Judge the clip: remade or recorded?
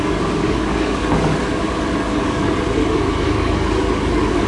remade